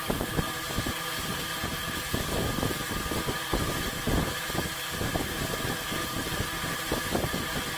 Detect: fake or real real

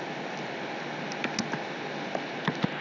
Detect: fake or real real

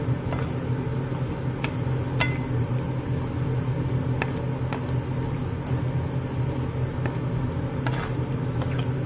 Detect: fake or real real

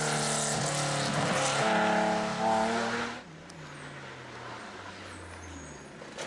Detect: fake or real real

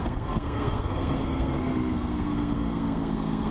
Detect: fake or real fake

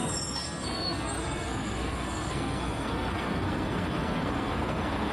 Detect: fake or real fake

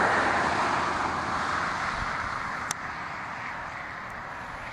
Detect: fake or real real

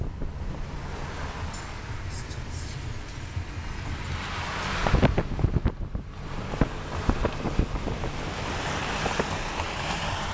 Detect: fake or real real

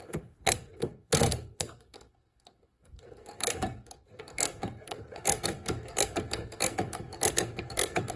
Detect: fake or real fake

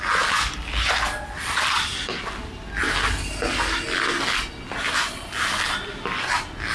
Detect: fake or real real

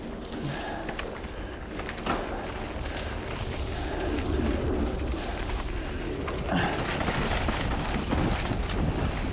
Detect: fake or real real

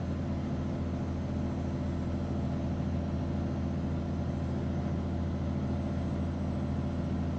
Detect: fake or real real